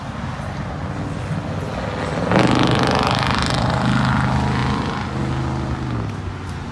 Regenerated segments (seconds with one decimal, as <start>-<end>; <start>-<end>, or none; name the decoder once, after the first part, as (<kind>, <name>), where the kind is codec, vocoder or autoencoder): none